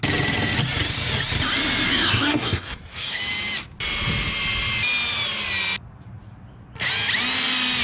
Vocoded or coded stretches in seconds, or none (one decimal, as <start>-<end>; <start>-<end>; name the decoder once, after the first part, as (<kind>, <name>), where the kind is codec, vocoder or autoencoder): 1.9-3.2 (codec, SNAC)